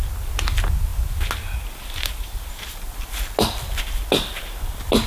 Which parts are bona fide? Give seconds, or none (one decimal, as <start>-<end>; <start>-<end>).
0.0-5.1